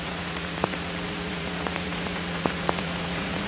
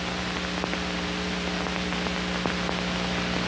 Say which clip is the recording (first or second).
second